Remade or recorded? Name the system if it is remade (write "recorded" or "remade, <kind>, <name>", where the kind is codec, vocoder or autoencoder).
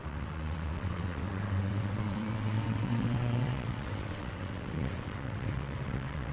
remade, vocoder, WaveNeXt